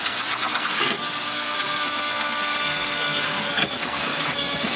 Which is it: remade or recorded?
remade